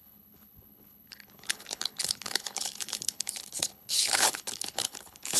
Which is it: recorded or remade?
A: remade